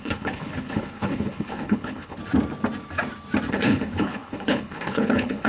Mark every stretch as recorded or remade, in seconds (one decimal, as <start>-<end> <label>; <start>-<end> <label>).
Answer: 0.0-2.2 remade; 2.2-3.5 recorded; 3.5-5.5 remade